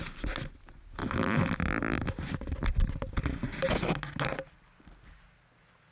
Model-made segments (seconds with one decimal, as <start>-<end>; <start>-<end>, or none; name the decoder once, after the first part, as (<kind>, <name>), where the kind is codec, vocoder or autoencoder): none